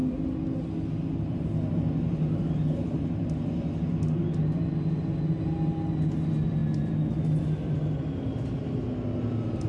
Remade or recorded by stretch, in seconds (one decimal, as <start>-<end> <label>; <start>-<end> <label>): 0.0-9.7 recorded